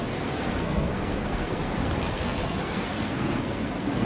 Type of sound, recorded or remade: remade